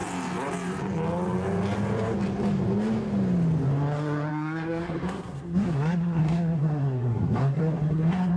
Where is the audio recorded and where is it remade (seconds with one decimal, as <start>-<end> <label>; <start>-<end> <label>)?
0.0-4.3 recorded; 4.3-8.4 remade